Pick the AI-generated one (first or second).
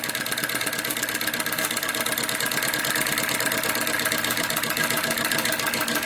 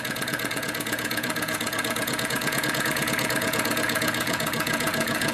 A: second